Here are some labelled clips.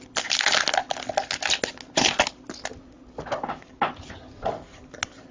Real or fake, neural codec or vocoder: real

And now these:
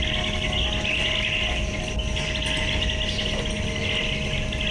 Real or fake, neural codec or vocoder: real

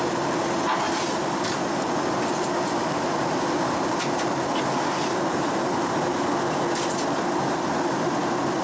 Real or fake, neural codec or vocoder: real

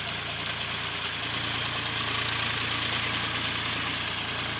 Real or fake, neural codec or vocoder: real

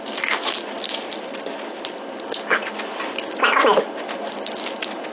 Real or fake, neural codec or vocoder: real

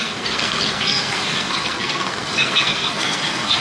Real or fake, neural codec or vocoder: fake, codec, SNAC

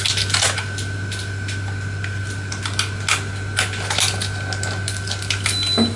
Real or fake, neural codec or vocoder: real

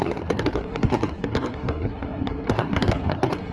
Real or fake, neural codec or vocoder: fake, codec, SNAC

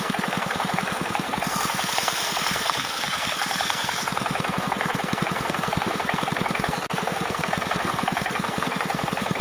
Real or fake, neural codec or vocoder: fake, codec, SNAC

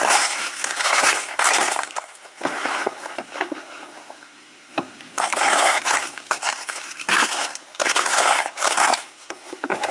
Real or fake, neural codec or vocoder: fake, codec, SNAC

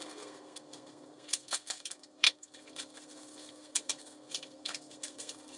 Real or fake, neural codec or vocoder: fake, codec, SNAC